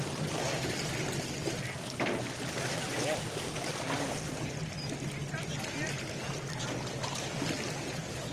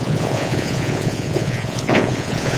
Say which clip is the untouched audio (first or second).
first